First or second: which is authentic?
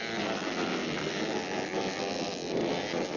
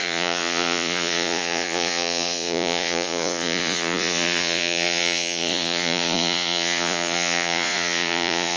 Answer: first